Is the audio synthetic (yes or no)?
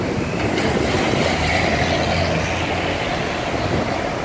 no